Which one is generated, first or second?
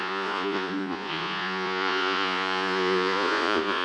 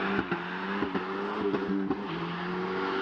first